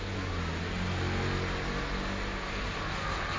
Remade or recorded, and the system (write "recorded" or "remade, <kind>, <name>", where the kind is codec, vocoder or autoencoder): recorded